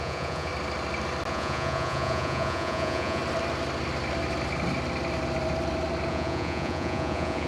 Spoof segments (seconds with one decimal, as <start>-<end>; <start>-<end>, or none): 0.0-0.5; 1.3-3.2; 6.1-7.5